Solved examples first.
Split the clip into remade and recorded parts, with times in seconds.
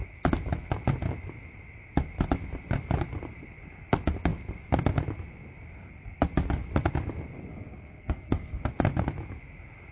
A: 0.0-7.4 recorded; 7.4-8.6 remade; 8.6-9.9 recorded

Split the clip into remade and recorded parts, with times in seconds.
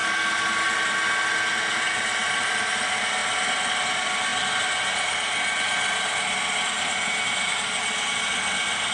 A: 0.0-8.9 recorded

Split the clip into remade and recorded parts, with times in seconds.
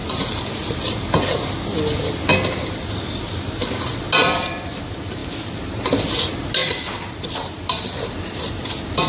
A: 0.0-6.6 recorded; 6.6-8.5 remade; 8.5-9.1 recorded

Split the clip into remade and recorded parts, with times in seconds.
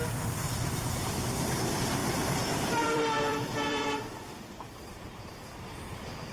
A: 0.0-6.3 remade